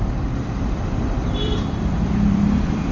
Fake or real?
fake